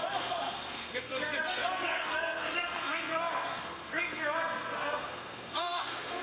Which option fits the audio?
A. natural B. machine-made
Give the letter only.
B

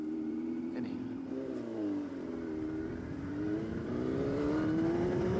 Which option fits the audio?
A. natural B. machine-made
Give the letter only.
B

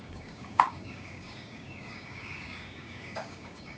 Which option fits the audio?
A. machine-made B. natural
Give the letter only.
A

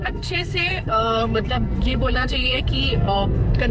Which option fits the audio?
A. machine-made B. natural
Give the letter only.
A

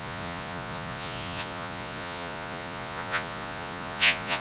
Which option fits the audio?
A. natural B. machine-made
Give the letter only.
B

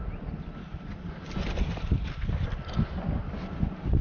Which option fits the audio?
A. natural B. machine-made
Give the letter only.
A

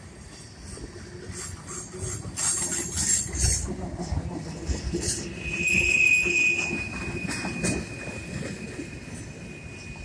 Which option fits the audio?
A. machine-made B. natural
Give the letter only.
B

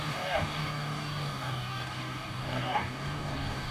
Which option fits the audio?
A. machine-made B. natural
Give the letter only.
A